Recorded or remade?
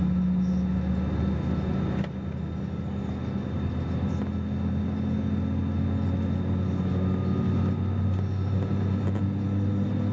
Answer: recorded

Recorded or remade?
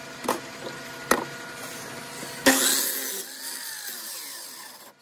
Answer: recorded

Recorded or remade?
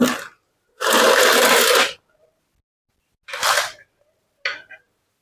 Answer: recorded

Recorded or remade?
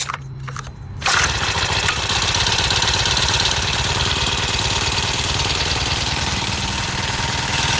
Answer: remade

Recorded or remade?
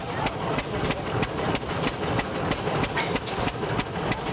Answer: recorded